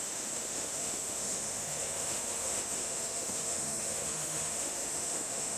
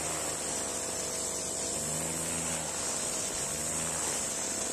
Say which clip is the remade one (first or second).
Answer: first